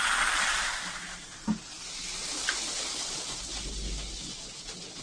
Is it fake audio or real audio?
real